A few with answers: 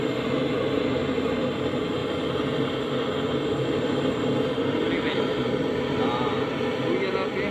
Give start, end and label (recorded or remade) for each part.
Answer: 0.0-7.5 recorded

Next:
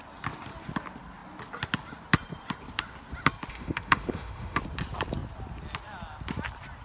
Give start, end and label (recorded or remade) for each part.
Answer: 0.0-3.5 recorded; 3.5-4.6 remade; 4.6-6.8 recorded

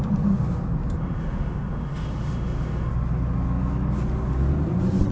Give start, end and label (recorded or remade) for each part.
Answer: 0.0-1.0 recorded; 1.0-2.9 remade; 2.9-5.1 recorded

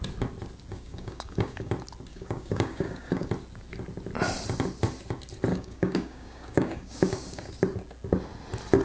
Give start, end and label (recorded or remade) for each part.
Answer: 0.0-0.7 recorded; 0.7-1.7 remade; 1.7-2.1 recorded; 2.1-3.3 remade; 3.3-5.5 recorded; 5.5-7.5 remade; 7.5-8.8 recorded

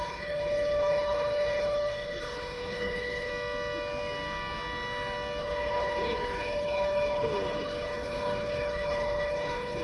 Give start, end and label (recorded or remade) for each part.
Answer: 0.0-3.3 remade; 3.3-5.4 recorded; 5.4-9.8 remade

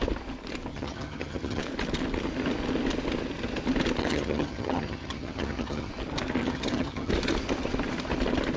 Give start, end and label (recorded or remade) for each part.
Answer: 0.0-0.7 recorded; 0.7-1.6 remade; 1.6-4.0 recorded; 4.0-5.9 remade; 5.9-6.4 recorded; 6.4-7.1 remade; 7.1-8.6 recorded

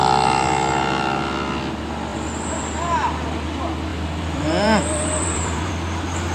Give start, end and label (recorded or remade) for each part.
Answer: 0.0-2.1 recorded; 2.1-2.7 remade; 2.7-3.9 recorded; 3.9-5.7 remade; 5.7-6.3 recorded